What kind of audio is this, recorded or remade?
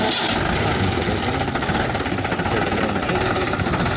recorded